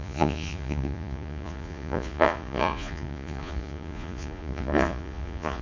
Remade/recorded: remade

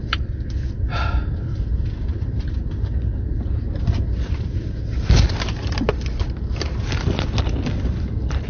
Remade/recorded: remade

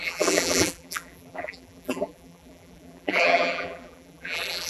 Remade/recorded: remade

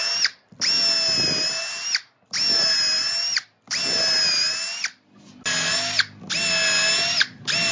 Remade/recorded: recorded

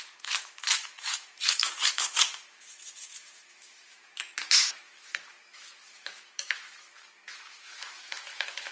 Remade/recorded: remade